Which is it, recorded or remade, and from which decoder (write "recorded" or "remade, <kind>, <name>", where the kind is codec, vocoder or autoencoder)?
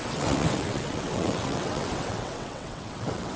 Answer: remade, vocoder, WaveNeXt